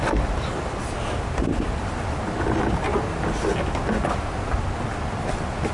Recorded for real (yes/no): yes